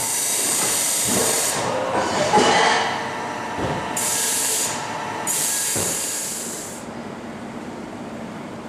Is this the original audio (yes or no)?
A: no